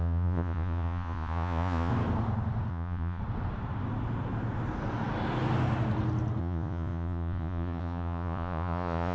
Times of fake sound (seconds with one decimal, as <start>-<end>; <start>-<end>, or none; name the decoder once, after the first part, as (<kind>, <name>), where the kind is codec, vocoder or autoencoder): 0.0-1.9 (vocoder, Vocos); 2.7-3.2; 6.4-9.1